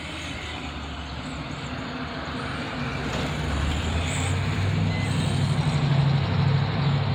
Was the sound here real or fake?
real